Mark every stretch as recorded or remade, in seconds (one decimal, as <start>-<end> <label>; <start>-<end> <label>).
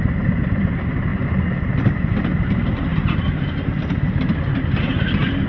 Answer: 0.0-5.5 recorded